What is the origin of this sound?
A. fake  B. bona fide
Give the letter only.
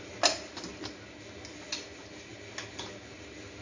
B